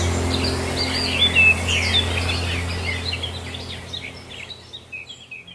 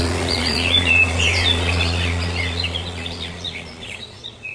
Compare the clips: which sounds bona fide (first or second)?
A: first